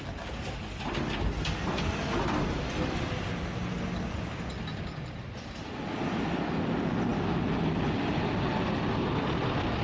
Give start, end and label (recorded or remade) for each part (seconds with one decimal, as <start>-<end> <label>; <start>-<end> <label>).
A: 0.0-9.8 recorded